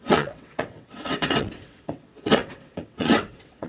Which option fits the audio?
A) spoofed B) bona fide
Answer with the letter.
A